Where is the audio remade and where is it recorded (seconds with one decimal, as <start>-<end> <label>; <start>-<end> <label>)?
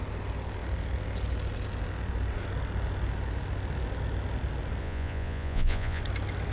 0.0-4.8 recorded; 4.8-6.0 remade; 6.0-6.5 recorded